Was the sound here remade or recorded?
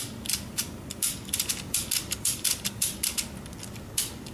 recorded